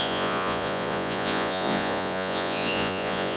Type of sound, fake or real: fake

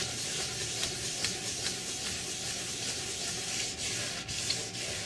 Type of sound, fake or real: real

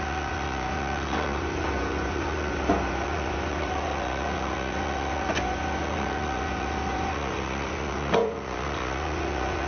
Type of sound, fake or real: fake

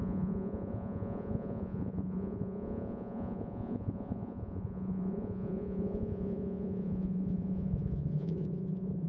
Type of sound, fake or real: fake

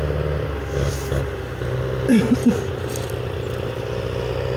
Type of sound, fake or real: real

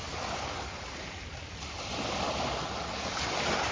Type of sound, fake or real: real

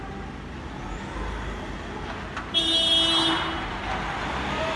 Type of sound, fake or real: real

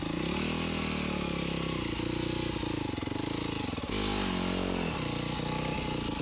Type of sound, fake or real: real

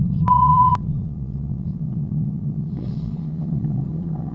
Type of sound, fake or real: fake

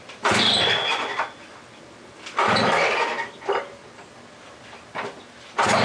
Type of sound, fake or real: real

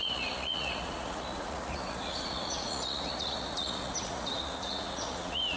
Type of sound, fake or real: fake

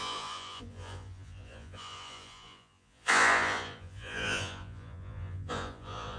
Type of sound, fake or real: fake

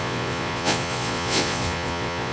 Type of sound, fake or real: fake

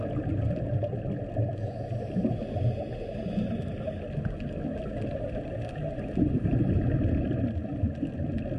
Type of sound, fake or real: real